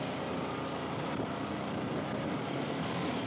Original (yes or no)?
yes